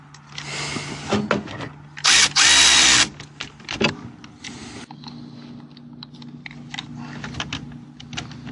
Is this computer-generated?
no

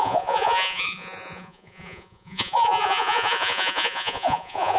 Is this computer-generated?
yes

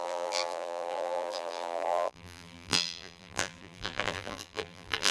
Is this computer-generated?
yes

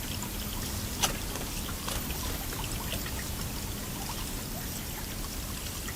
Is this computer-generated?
no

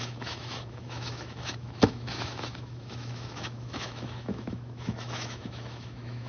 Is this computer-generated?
yes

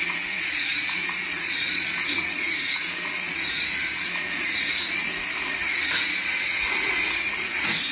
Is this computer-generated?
yes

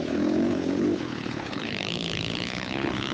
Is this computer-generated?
yes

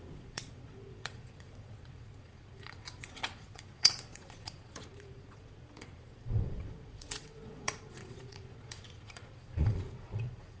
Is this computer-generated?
yes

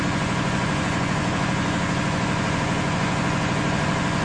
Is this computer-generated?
yes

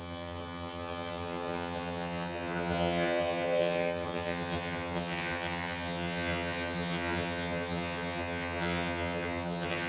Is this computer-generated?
yes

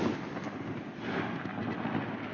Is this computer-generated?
no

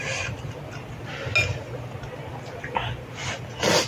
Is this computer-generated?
no